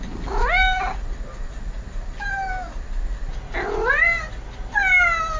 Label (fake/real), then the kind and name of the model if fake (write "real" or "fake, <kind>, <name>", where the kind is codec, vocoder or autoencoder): real